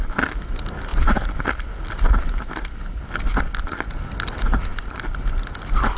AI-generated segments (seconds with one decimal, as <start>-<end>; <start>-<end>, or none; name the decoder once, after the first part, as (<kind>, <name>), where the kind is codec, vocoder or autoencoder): none